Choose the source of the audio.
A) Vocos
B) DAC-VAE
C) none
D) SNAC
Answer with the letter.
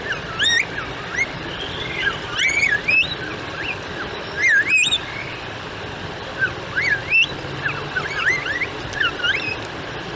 C